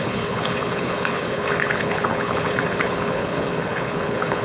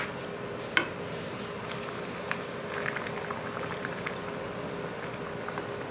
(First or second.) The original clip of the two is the second